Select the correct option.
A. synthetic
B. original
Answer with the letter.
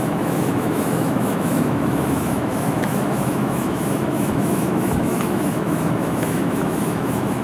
A